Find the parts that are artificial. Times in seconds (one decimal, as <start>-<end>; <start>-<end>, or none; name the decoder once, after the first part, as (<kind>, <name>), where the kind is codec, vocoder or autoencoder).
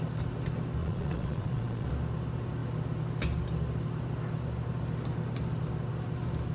0.8-1.9 (vocoder, Vocos)